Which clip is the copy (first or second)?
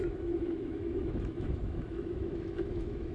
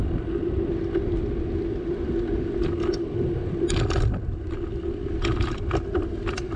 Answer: first